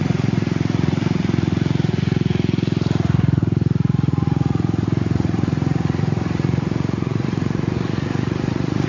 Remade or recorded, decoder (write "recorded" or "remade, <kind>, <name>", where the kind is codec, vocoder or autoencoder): remade, vocoder, Vocos